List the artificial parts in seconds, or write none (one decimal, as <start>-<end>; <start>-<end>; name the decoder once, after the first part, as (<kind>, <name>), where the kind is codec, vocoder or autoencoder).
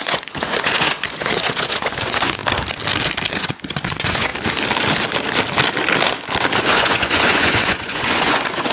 0.0-2.4 (vocoder, Vocos); 3.3-4.3; 6.7-8.7